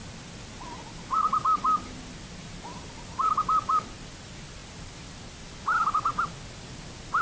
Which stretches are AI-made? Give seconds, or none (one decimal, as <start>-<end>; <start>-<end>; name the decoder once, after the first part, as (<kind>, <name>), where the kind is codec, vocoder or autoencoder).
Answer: none